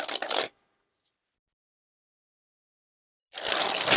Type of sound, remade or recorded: recorded